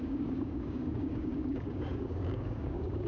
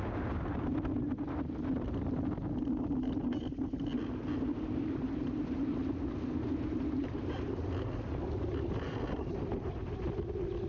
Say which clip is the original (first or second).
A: second